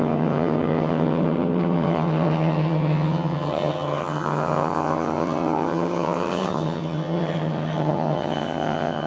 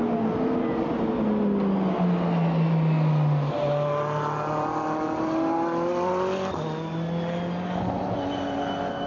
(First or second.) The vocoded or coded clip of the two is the first